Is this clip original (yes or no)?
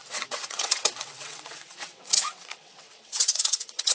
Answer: no